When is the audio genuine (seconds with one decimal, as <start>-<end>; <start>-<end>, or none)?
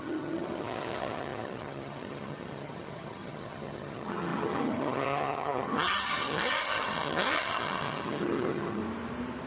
8.8-9.5